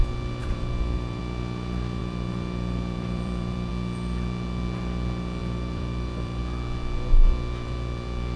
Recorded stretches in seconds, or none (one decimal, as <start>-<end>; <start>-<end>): 0.0-0.4; 1.2-2.0; 3.7-5.4; 6.4-8.4